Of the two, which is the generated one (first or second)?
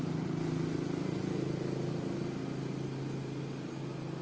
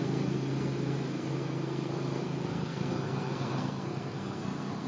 second